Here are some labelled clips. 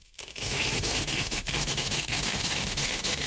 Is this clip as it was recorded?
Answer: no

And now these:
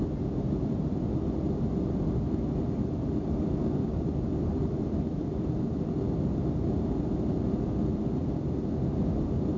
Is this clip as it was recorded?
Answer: yes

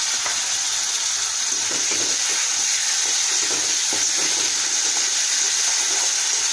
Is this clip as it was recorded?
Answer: yes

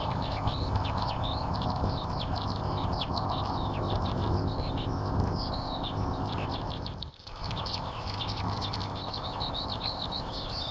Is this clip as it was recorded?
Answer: no